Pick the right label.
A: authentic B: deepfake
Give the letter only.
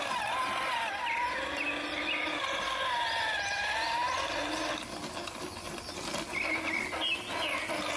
A